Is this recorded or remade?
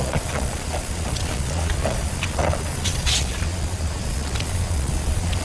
remade